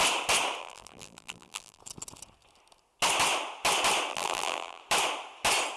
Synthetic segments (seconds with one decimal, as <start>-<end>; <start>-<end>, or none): 0.6-1.8; 4.1-4.8